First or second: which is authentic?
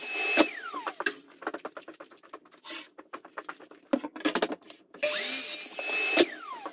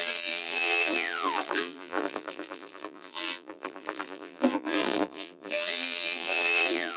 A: first